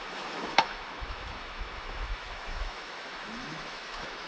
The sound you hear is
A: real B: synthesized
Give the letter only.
B